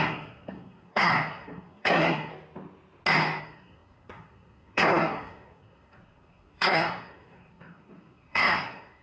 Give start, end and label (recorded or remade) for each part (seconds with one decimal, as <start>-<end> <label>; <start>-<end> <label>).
0.0-2.3 remade; 2.3-3.4 recorded; 3.4-9.0 remade